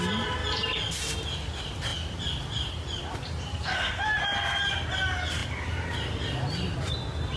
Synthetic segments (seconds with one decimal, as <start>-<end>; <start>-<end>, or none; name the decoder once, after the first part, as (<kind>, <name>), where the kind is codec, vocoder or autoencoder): 3.5-4.2 (codec, SNAC)